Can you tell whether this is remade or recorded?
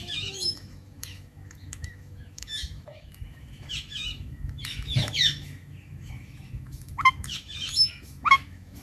remade